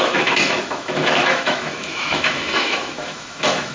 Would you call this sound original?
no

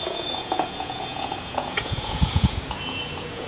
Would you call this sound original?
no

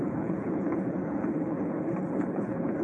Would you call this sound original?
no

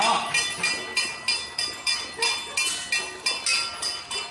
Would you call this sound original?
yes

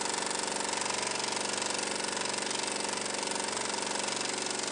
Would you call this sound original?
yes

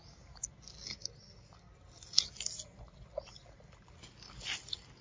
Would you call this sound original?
yes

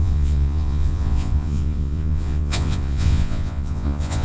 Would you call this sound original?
no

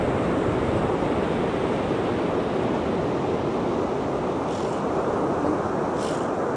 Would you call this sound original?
yes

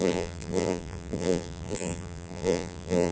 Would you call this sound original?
no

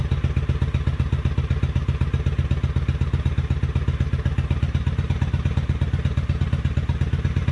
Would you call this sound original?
yes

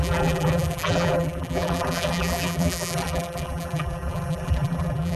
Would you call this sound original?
no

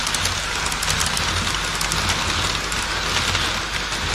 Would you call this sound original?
yes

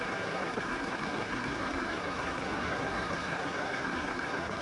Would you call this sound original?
no